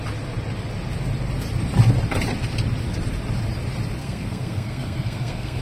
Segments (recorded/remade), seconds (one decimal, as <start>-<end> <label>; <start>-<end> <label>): 0.0-4.0 recorded; 4.0-5.6 remade